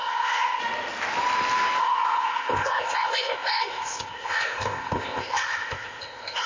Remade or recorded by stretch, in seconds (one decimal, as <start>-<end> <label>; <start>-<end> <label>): 0.0-0.6 remade; 0.6-1.8 recorded; 1.8-6.5 remade